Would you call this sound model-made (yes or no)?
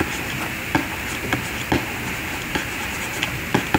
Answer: yes